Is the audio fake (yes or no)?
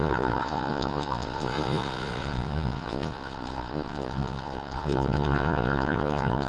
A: yes